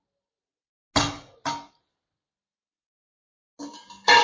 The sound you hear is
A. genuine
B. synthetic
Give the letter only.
A